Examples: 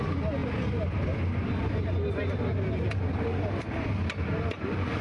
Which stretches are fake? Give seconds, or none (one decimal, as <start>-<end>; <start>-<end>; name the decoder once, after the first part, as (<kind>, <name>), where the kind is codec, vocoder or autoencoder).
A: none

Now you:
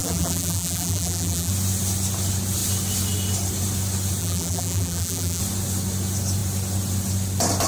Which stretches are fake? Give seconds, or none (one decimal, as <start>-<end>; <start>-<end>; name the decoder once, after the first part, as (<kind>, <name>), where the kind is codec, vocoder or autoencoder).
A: 0.0-1.5 (vocoder, BigVGAN v2); 4.2-5.4

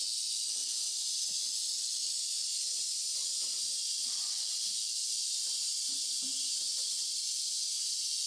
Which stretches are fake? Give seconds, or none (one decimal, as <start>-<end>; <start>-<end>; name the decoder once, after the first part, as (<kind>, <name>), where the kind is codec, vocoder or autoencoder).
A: 0.6-1.5 (vocoder, BigVGAN v2); 2.4-4.3; 5.2-8.3